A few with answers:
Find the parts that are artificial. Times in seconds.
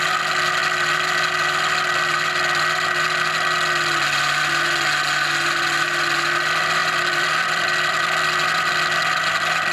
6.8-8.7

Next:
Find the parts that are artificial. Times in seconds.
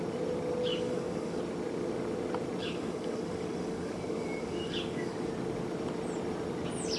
0.7-1.4; 2.6-5.3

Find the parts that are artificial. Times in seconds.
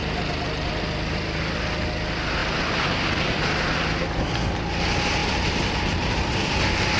5.2-7.0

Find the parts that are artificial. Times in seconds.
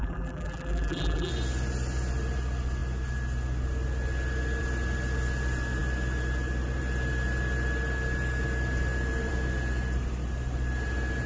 0.0-1.3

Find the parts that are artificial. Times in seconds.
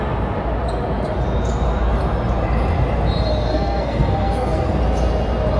3.5-4.8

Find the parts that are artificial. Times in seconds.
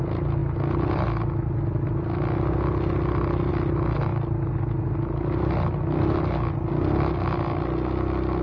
none